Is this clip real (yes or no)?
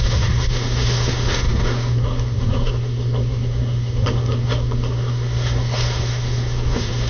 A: no